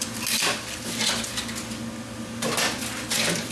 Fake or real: real